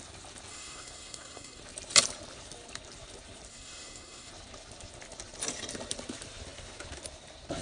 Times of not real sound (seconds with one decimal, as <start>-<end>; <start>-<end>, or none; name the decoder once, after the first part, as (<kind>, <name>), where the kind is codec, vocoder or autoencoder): 0.5-1.6 (codec, SNAC); 3.5-4.3

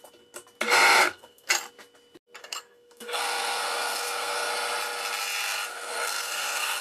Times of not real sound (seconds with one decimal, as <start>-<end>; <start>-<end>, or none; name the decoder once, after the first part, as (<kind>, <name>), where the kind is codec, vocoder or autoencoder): 1.0-1.5 (codec, SNAC); 2.4-4.5; 5.7-6.8